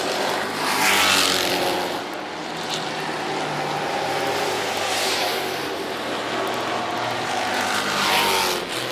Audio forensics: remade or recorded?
recorded